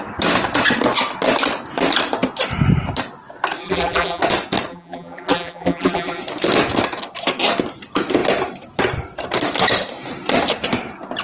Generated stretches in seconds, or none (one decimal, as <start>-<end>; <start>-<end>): 3.6-4.2; 4.7-6.2